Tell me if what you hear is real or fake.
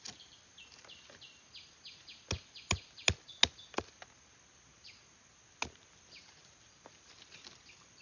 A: real